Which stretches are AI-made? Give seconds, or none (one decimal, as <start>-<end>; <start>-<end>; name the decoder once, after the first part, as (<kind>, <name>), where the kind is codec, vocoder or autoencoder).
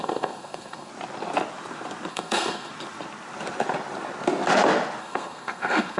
0.0-0.9 (codec, SNAC); 2.1-2.7; 5.0-6.0